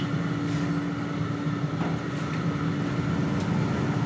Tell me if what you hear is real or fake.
real